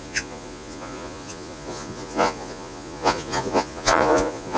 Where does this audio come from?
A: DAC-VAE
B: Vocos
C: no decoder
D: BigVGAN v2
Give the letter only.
B